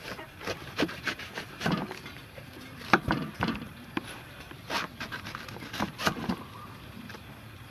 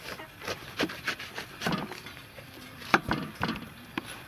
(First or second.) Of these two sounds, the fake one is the first